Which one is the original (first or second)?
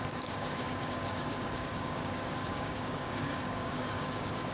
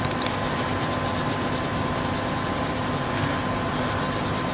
second